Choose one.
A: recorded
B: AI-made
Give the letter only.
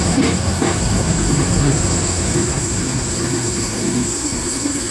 B